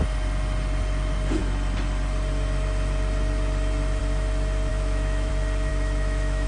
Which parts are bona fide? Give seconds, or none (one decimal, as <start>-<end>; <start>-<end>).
0.0-4.7; 5.3-5.7